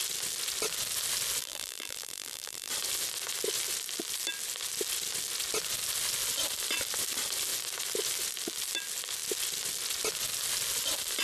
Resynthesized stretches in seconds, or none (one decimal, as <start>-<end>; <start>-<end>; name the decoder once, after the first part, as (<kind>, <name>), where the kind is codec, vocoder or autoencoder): 1.4-2.7 (vocoder, BigVGAN v2)